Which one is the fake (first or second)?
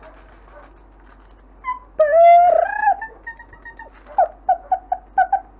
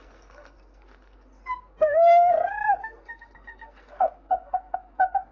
second